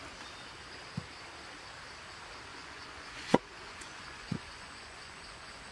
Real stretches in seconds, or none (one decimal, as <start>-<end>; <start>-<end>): 0.0-2.5